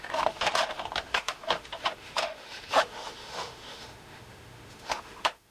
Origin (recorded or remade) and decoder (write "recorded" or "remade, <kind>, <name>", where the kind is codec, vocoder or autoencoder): remade, autoencoder, DAC-VAE